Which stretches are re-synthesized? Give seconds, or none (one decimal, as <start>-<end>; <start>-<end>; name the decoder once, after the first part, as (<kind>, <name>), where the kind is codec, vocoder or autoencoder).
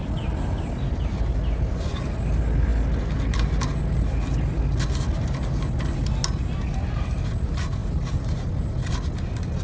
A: none